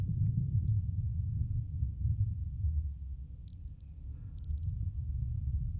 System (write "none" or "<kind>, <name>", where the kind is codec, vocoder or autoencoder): none